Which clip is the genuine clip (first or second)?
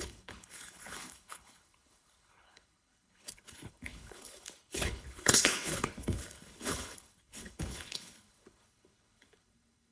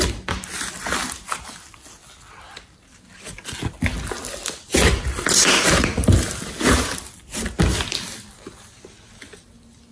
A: second